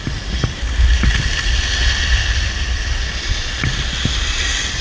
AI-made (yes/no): no